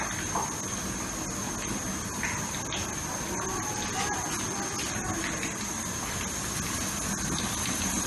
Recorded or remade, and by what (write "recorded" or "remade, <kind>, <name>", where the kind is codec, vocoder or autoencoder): recorded